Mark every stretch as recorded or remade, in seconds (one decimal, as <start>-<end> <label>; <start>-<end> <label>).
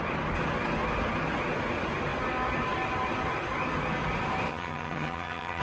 0.0-4.5 recorded; 4.5-5.6 remade